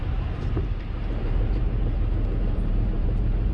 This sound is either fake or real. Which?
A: fake